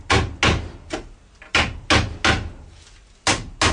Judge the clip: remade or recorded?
recorded